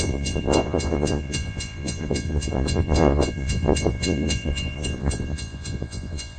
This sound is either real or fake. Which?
fake